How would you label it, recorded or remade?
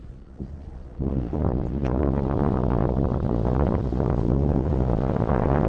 remade